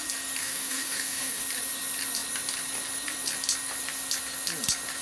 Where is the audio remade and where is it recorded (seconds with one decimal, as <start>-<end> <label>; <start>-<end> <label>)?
0.0-0.4 recorded; 0.4-1.4 remade; 1.4-5.0 recorded